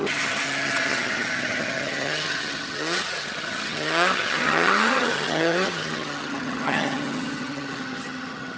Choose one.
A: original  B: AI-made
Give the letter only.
B